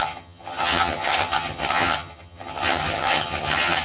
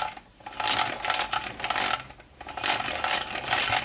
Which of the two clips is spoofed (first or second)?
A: first